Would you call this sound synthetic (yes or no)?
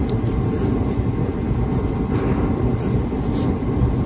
no